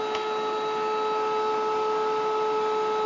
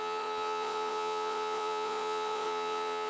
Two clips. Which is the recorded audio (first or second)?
first